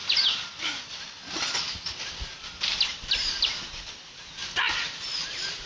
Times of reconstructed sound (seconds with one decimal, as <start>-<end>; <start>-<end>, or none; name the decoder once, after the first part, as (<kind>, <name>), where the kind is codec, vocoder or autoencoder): none